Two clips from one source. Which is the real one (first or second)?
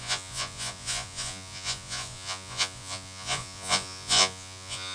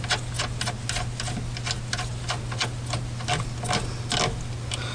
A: second